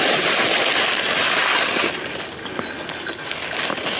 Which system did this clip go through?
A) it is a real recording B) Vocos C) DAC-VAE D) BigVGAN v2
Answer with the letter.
A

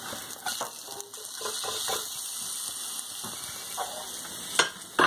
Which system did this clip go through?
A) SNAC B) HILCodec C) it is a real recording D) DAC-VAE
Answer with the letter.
C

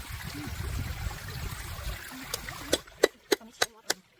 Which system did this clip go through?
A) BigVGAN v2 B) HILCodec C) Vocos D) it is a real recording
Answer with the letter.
D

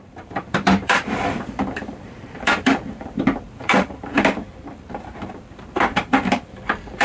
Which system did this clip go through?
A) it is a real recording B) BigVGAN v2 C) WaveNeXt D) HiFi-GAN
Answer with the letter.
B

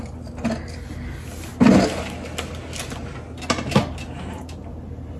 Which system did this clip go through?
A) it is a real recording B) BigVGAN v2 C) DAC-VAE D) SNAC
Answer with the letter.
A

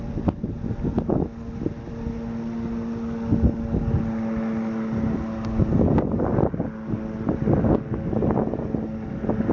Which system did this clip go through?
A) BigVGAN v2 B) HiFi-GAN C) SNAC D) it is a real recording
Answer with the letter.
D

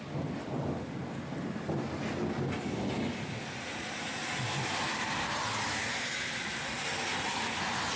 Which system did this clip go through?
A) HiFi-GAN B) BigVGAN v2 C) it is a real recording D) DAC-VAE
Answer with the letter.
C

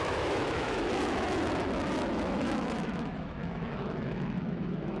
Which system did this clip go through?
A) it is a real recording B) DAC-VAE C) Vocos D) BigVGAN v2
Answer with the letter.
B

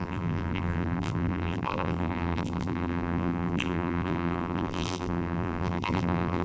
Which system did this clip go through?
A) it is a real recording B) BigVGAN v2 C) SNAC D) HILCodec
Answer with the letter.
B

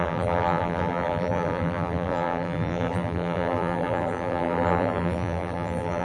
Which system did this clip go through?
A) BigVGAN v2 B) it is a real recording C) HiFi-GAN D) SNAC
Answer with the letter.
A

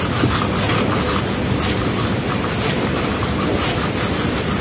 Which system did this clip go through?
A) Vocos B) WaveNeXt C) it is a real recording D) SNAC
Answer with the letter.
C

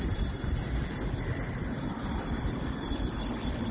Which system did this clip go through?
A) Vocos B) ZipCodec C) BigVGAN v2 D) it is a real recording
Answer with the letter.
D